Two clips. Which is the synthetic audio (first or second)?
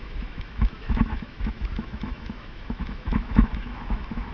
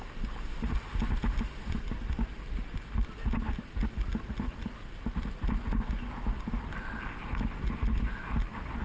first